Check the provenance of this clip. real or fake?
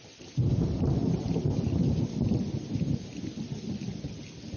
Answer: real